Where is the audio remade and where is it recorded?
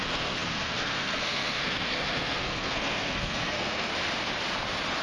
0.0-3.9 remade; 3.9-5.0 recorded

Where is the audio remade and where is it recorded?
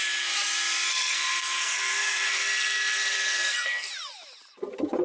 0.0-0.9 recorded; 0.9-3.9 remade; 3.9-5.0 recorded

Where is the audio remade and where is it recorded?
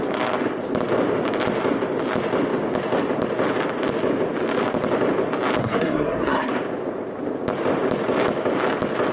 0.0-5.6 recorded; 5.6-6.5 remade; 6.5-9.1 recorded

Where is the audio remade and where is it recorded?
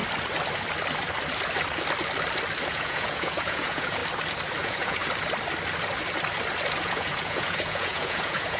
0.0-2.7 recorded; 2.7-4.0 remade; 4.0-4.6 recorded; 4.6-5.0 remade; 5.0-6.8 recorded; 6.8-8.6 remade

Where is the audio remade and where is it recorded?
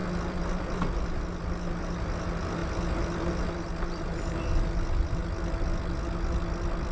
0.0-6.9 recorded